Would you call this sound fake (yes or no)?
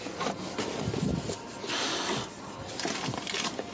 no